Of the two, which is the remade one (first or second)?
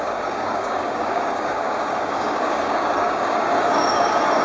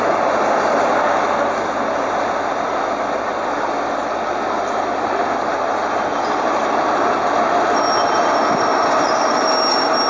first